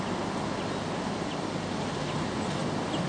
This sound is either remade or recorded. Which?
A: recorded